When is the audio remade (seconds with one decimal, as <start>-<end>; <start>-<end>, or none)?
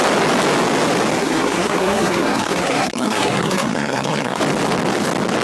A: 1.2-4.4